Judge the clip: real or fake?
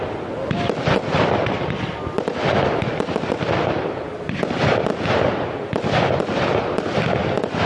real